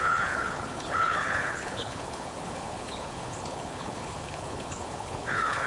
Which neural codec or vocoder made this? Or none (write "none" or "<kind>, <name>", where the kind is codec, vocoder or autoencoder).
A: codec, HILCodec